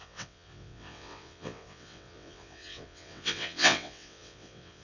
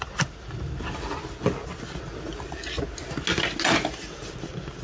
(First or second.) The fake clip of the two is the first